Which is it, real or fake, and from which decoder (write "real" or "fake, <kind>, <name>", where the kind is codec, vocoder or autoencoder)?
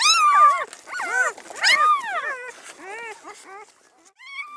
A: real